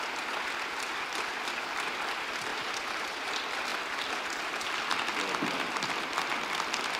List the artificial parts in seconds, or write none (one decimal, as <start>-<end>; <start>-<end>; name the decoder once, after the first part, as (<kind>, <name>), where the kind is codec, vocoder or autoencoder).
2.5-3.3 (vocoder, BigVGAN v2)